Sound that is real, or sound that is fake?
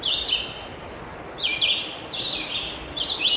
real